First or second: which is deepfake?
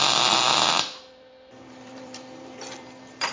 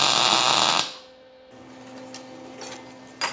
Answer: first